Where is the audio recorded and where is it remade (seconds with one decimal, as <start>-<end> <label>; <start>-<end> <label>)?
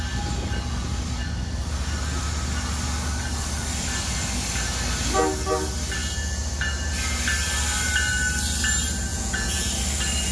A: 0.0-9.1 recorded; 9.1-9.7 remade; 9.7-10.3 recorded